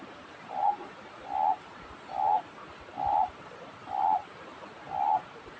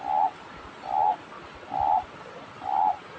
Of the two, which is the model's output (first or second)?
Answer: first